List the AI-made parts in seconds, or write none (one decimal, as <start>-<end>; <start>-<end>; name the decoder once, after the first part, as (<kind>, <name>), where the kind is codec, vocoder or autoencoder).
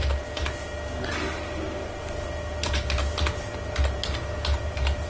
none